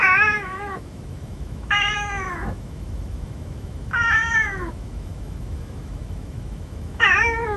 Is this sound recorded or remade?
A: remade